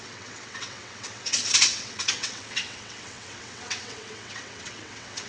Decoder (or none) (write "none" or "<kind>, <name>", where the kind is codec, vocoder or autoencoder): vocoder, WaveNeXt